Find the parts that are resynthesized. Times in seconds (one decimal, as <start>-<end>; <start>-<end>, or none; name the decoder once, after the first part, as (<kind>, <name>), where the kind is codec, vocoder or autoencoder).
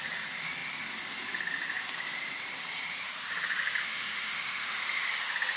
3.8-5.1 (autoencoder, DAC-VAE)